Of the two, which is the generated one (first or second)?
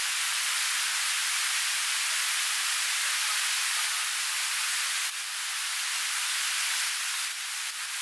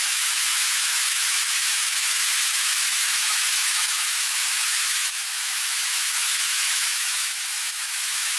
second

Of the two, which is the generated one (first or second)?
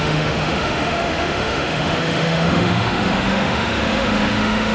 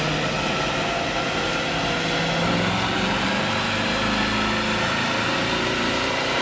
first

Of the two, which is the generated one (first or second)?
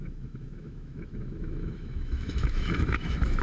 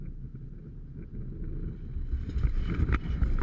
first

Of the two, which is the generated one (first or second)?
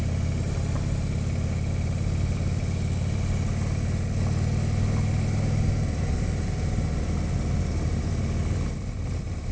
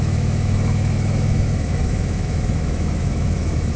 second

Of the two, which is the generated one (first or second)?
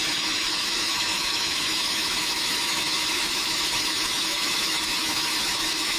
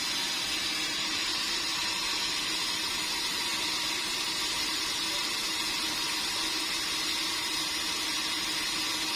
first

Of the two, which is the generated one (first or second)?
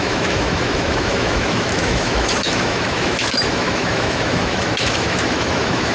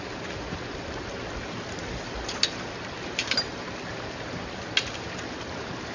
first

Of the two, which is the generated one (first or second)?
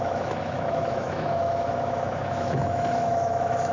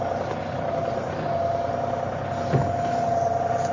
first